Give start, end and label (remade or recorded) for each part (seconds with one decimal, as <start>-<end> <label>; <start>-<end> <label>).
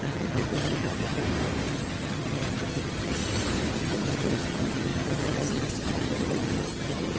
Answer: 0.0-1.2 remade; 1.2-1.7 recorded; 1.7-3.2 remade; 3.2-3.7 recorded; 3.7-7.2 remade